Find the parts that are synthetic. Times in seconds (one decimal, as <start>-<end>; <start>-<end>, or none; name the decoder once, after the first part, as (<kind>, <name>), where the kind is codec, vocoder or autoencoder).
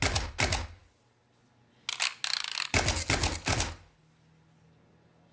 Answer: none